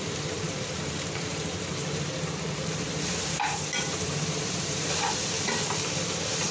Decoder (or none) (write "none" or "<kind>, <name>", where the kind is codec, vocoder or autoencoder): vocoder, BigVGAN v2